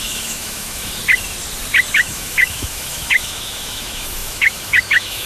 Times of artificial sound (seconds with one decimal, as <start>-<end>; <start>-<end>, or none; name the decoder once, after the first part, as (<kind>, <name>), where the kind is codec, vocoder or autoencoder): 0.0-1.0 (autoencoder, DAC-VAE); 1.9-5.3